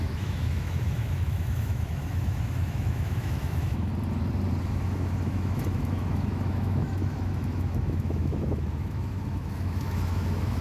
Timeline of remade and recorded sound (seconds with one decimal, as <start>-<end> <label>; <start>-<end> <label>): 0.0-3.9 remade; 3.9-4.6 recorded; 4.6-10.6 remade